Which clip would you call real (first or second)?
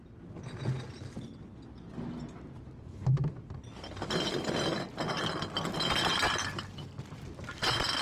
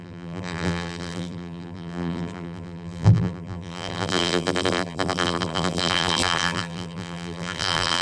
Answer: first